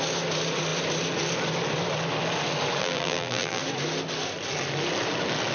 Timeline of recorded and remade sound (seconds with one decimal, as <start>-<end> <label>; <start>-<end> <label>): 0.0-2.8 recorded; 2.8-3.6 remade; 3.6-5.5 recorded